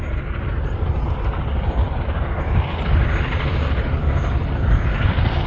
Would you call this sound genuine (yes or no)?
yes